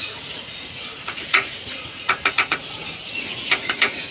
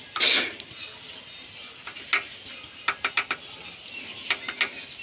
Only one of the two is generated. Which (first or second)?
first